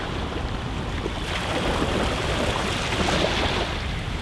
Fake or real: real